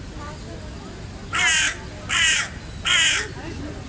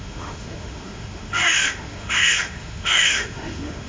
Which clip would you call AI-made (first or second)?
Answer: second